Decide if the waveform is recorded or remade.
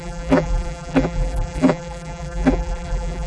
remade